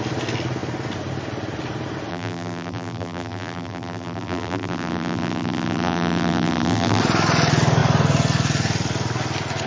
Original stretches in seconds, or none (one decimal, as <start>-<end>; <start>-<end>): 0.0-2.1; 7.0-9.7